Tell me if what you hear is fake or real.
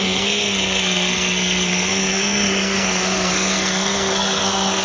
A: fake